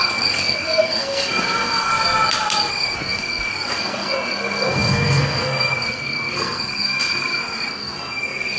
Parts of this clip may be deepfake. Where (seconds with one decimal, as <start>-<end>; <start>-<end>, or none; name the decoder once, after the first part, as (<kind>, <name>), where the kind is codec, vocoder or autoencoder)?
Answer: 0.0-1.9 (codec, SNAC); 2.7-8.6